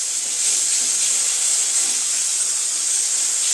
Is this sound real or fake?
real